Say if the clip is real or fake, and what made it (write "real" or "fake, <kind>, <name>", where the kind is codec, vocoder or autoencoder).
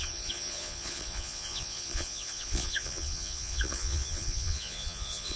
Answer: fake, vocoder, Vocos